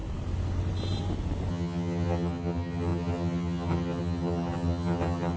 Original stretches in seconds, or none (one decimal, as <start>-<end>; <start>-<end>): 0.0-1.5